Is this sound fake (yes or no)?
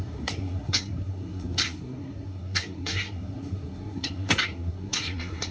yes